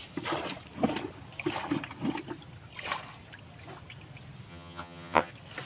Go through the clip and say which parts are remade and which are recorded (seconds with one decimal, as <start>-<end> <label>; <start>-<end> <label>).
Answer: 0.0-4.5 recorded; 4.5-5.3 remade; 5.3-5.7 recorded